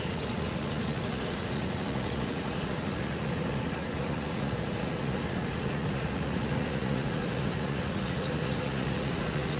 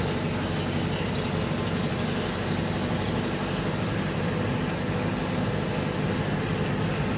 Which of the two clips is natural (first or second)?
second